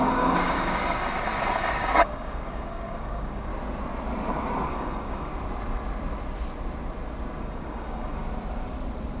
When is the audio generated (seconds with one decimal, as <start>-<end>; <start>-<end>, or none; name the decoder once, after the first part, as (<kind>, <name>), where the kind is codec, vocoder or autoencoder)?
0.0-3.5 (codec, DAC); 4.7-5.3; 7.4-8.2